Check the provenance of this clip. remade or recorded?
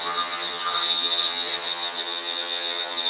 remade